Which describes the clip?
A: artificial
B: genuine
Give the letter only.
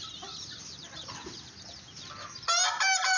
B